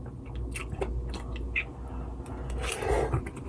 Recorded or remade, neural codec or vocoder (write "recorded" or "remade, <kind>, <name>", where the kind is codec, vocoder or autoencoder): recorded